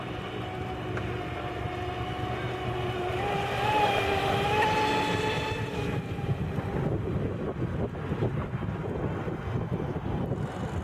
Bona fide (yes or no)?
yes